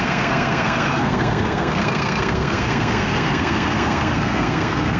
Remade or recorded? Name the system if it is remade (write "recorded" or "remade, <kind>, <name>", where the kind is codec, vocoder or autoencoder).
remade, codec, SNAC